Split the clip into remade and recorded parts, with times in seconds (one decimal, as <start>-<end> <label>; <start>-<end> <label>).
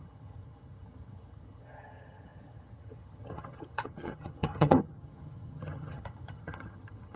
0.0-7.2 remade